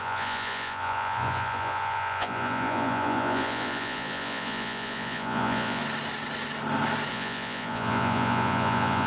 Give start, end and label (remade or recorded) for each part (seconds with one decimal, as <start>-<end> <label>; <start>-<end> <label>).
0.0-5.8 remade; 5.8-7.1 recorded; 7.1-9.1 remade